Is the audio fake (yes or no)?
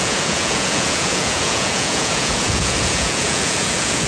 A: yes